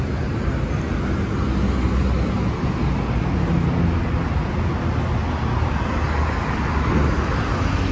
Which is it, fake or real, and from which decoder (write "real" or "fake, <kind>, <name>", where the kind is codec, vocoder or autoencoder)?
real